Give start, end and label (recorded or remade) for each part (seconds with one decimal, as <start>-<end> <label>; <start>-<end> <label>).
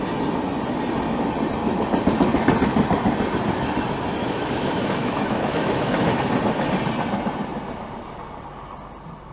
0.0-4.2 recorded; 4.2-6.2 remade; 6.2-9.3 recorded